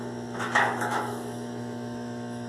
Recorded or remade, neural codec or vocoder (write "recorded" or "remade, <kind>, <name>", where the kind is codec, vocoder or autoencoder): remade, autoencoder, DAC-VAE